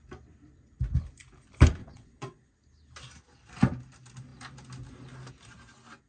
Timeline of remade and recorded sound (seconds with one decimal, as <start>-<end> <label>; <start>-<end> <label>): 0.0-1.8 recorded; 1.8-2.5 remade; 2.5-6.1 recorded